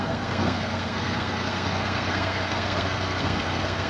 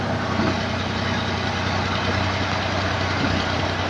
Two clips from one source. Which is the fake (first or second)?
first